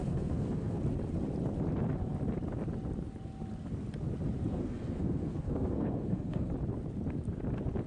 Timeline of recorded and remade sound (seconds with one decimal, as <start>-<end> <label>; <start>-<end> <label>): 0.0-0.8 remade; 0.8-4.5 recorded; 4.5-6.5 remade; 6.5-7.9 recorded